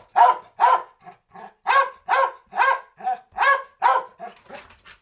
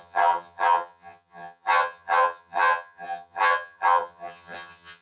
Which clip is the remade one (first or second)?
second